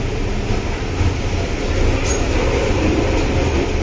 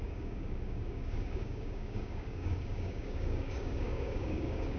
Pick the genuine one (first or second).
first